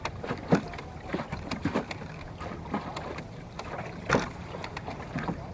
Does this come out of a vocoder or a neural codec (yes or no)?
no